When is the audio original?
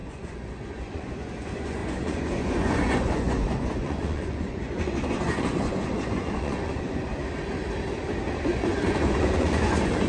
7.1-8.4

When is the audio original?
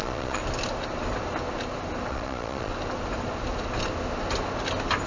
0.4-2.1; 2.7-5.1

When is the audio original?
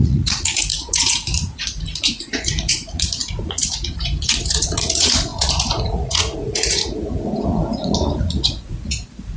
none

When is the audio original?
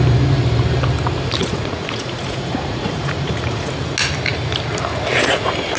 0.0-1.4; 3.7-5.8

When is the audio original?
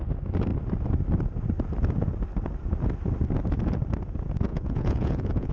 0.0-4.5